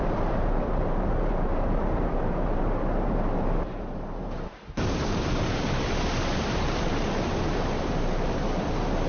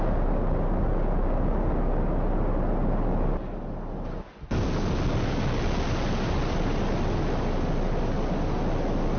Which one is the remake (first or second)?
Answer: first